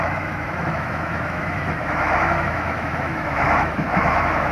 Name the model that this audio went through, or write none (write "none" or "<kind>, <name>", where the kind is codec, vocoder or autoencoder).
autoencoder, DAC-VAE